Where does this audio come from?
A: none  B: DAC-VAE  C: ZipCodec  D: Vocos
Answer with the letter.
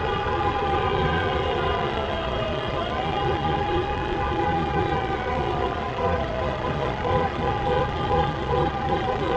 D